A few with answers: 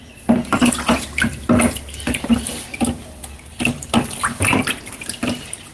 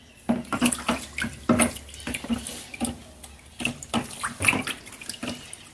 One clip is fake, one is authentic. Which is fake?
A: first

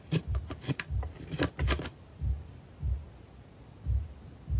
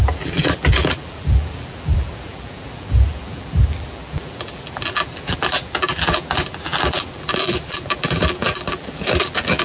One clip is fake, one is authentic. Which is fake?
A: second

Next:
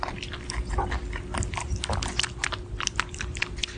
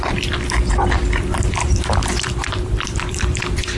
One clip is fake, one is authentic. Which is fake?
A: second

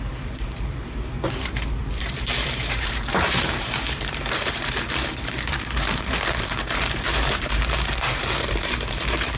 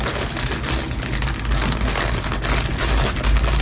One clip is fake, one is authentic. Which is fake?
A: first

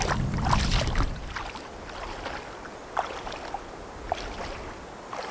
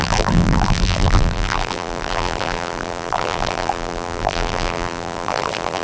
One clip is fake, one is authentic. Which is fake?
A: second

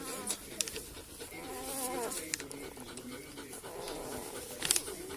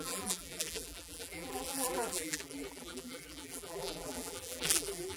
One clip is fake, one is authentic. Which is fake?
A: second